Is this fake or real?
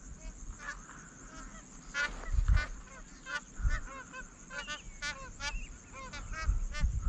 real